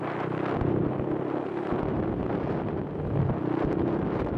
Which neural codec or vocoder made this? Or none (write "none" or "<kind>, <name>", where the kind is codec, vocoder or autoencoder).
none